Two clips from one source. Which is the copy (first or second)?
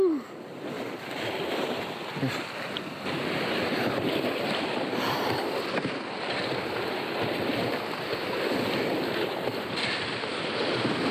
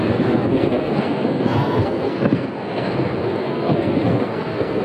second